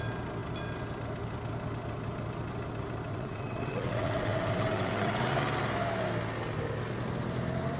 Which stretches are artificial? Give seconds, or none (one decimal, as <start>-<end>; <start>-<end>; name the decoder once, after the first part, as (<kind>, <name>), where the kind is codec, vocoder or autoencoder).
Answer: 3.1-5.4 (vocoder, WaveNeXt)